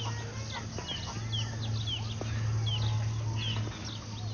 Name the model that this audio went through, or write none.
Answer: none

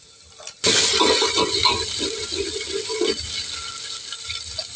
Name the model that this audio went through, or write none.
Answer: none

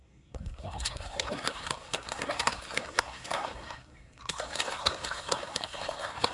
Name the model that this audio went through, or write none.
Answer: codec, SNAC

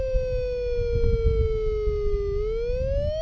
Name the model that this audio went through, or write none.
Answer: none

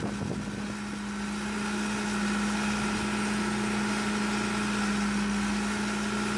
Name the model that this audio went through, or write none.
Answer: none